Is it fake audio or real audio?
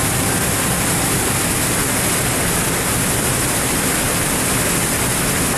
real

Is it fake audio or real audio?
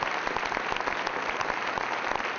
real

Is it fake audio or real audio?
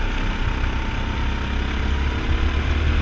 real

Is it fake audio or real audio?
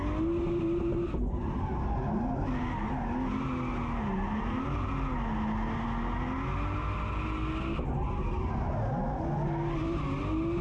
real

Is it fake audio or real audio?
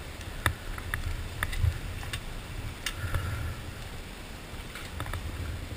real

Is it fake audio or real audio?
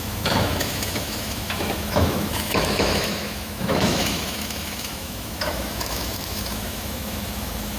fake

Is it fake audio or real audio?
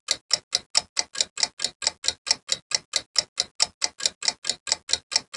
real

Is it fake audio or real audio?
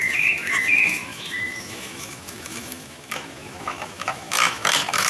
fake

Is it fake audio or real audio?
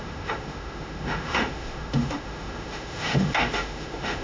fake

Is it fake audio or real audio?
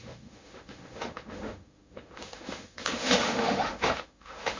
fake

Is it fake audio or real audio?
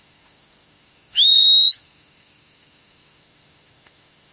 fake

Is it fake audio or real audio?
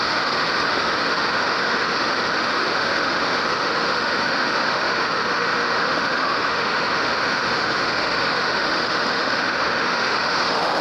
fake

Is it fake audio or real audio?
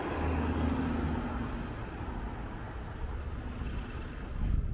real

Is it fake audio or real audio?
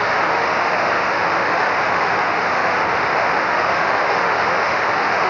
fake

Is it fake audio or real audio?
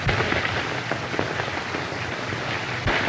real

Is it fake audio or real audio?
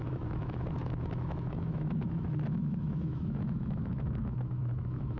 fake